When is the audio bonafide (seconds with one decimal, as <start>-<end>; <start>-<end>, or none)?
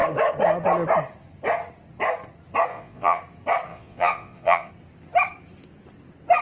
0.0-2.7; 3.2-3.7; 4.7-6.4